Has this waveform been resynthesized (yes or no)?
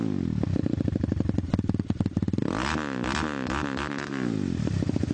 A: no